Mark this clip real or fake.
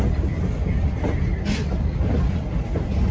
real